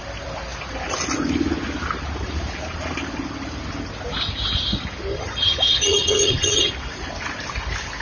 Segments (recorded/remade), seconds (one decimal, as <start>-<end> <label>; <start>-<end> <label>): 0.0-5.1 recorded; 5.1-6.7 remade; 6.7-8.0 recorded